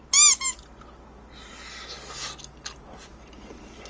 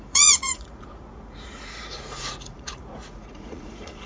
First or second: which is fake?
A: second